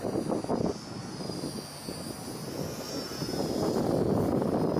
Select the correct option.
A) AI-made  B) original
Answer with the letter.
B